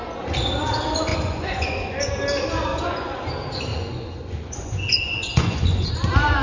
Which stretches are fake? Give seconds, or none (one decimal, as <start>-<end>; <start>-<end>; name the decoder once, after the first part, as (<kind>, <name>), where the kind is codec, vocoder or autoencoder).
1.1-2.1 (vocoder, Vocos); 2.7-3.2; 3.7-5.9